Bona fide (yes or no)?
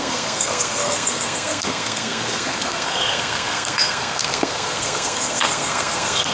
no